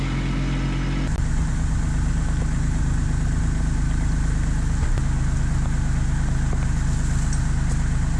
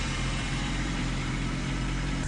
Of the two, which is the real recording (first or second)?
first